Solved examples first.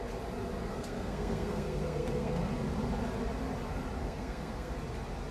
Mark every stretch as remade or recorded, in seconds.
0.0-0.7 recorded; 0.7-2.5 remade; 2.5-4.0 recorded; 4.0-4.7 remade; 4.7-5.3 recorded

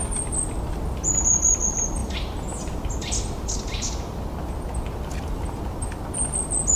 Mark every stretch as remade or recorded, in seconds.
0.0-6.8 recorded

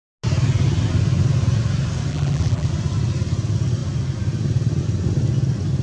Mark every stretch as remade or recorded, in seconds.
0.0-2.1 recorded; 2.1-2.7 remade; 2.7-5.8 recorded

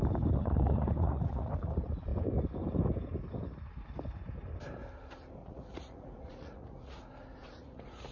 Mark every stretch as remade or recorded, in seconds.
0.0-0.4 recorded; 0.4-1.5 remade; 1.5-5.4 recorded; 5.4-7.0 remade; 7.0-7.4 recorded; 7.4-8.1 remade

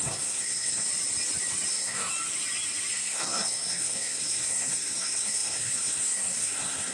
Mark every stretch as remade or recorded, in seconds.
0.0-0.9 remade; 0.9-1.7 recorded; 1.7-2.1 remade; 2.1-2.9 recorded; 2.9-6.9 remade

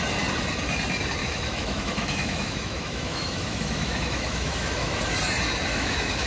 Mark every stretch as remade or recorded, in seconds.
0.0-1.2 recorded; 1.2-5.0 remade; 5.0-5.7 recorded; 5.7-6.3 remade

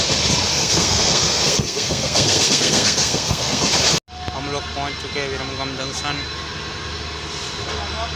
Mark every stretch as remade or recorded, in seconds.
0.0-0.5 recorded; 0.5-3.7 remade; 3.7-8.2 recorded